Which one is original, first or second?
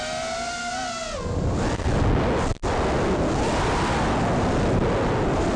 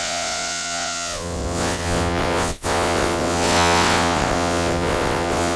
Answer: first